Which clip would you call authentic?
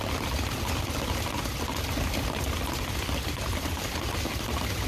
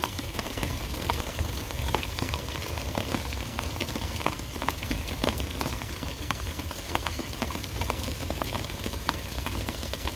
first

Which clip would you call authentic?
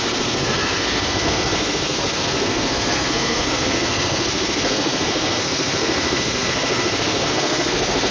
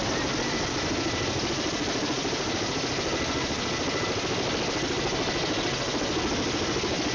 second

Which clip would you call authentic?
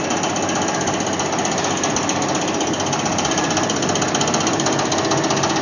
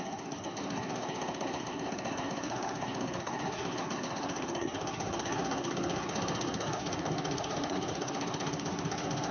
first